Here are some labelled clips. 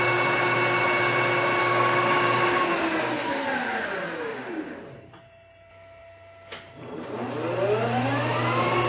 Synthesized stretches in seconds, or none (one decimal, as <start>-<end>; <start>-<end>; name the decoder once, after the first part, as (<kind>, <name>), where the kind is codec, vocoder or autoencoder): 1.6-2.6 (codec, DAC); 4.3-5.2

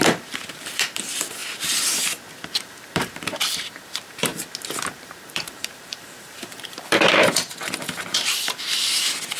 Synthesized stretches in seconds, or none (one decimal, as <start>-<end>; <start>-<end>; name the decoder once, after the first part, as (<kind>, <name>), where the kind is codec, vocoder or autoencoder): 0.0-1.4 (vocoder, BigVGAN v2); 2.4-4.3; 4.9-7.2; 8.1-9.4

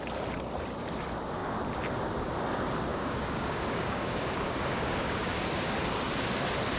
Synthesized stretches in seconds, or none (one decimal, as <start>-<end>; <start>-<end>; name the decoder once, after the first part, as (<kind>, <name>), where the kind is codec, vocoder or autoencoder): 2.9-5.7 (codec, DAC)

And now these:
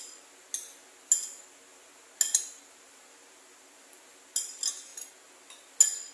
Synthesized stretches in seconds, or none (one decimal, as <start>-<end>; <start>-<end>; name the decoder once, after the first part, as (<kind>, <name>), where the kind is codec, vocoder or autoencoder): none

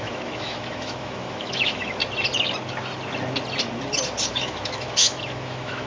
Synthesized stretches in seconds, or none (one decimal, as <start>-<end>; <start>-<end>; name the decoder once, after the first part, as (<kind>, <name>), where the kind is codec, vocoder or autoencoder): 0.0-2.0 (autoencoder, DAC-VAE); 4.3-5.9

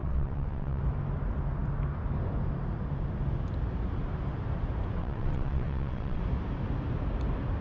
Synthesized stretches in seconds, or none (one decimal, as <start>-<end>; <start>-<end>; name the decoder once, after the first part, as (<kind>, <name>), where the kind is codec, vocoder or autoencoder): 0.0-0.8 (vocoder, WaveNeXt); 5.0-6.2

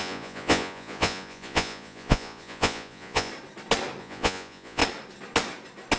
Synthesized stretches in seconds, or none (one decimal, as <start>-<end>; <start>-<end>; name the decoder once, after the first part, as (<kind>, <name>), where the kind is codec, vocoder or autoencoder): 0.0-3.3 (vocoder, Vocos); 4.0-4.8